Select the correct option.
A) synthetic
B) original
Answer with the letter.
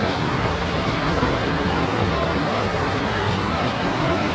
A